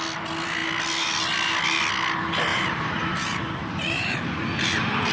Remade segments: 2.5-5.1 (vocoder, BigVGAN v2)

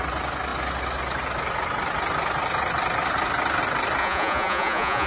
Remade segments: 4.0-5.1 (vocoder, Vocos)

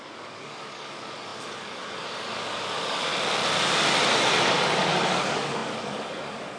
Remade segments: 0.0-3.1 (codec, DAC); 4.4-6.6

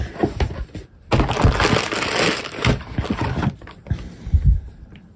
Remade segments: none

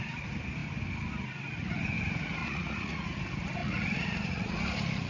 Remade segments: 2.4-3.2 (vocoder, Vocos); 3.6-4.6